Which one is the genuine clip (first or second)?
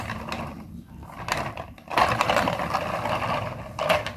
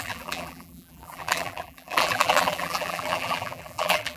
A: first